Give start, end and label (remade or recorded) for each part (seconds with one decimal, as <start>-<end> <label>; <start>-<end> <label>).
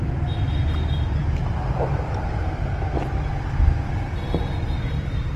0.0-1.2 recorded; 1.2-3.4 remade; 3.4-5.4 recorded